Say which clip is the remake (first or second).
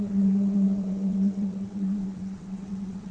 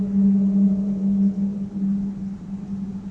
first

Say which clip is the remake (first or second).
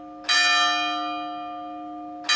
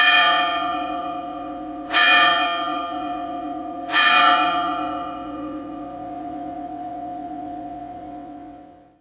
second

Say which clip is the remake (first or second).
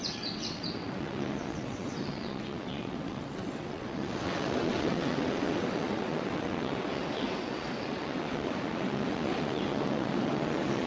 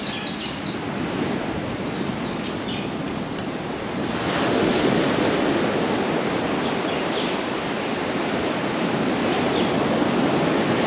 first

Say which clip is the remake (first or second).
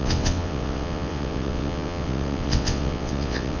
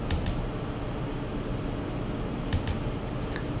first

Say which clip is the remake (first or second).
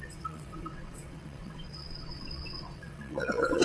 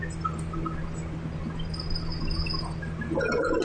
first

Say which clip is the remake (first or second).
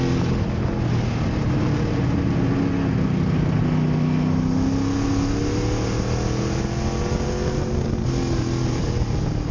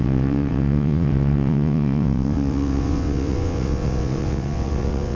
second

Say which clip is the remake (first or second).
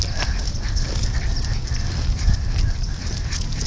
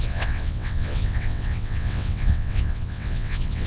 second